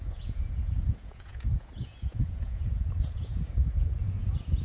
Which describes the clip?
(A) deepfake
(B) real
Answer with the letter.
A